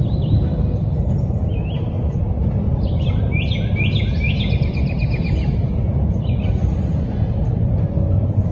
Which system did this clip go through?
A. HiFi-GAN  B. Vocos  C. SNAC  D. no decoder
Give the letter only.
D